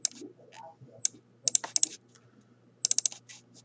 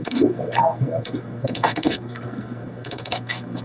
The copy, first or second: second